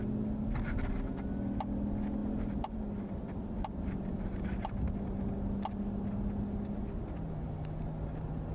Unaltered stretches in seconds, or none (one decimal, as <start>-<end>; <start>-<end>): 0.0-8.5